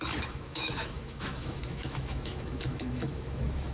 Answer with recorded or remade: remade